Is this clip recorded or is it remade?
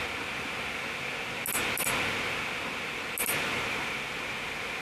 recorded